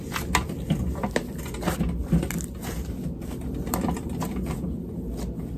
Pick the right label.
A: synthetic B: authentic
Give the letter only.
B